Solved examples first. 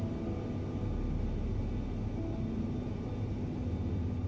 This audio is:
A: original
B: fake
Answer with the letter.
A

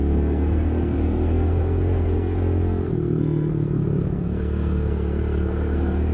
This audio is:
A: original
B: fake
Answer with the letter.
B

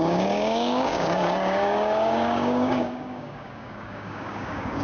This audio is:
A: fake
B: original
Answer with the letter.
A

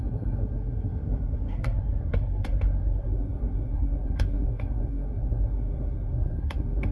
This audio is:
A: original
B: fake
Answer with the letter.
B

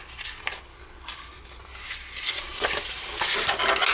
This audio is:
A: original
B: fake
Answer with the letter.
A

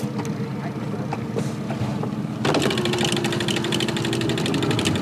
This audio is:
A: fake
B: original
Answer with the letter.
B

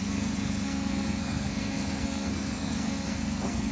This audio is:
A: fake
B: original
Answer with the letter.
A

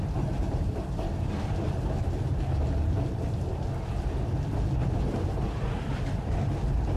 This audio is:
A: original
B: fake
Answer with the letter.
A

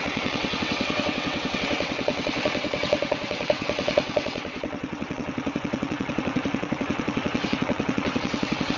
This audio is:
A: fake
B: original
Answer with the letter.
A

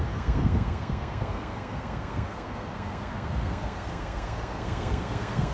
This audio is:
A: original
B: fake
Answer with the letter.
B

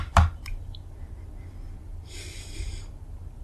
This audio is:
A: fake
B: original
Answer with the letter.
B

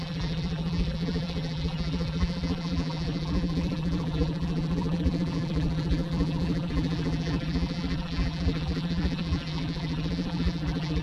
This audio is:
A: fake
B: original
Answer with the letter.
A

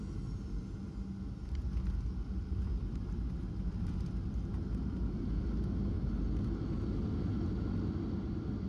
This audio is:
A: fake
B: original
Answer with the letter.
B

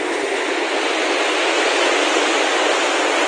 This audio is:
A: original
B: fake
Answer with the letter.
A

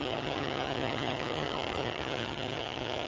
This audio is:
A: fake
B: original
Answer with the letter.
A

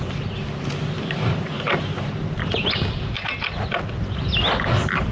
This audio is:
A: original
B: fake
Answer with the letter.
A